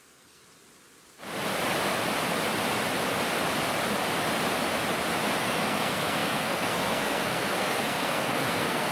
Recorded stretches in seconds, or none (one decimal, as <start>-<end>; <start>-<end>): 0.4-5.4